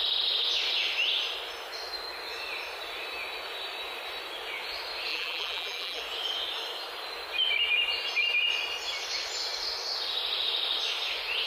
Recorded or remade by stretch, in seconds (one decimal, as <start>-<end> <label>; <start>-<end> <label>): 0.0-5.1 recorded; 5.1-6.0 remade; 6.0-11.5 recorded